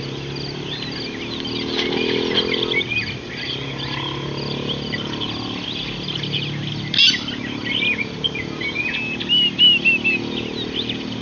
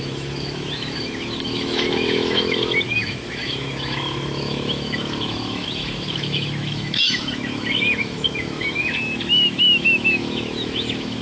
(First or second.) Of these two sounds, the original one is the first